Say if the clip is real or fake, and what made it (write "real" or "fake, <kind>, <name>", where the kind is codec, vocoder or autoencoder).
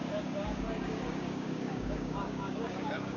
fake, codec, DAC